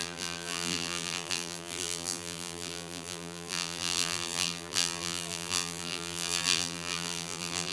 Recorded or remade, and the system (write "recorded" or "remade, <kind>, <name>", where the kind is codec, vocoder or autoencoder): remade, vocoder, BigVGAN v2